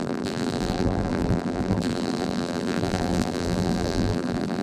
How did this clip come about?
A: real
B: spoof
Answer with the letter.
B